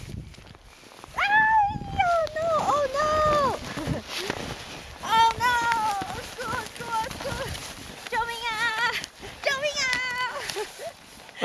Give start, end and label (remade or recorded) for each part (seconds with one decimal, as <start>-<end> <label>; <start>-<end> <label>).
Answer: 0.0-11.4 recorded